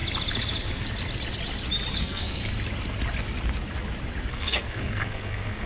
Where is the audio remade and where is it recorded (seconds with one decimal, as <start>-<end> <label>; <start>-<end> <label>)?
0.0-2.0 recorded; 2.0-2.4 remade; 2.4-4.3 recorded; 4.3-5.7 remade